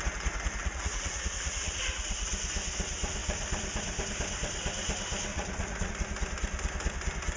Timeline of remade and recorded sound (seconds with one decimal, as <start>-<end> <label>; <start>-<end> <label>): 0.0-0.6 recorded; 0.6-2.3 remade; 2.3-5.3 recorded; 5.3-5.9 remade; 5.9-7.4 recorded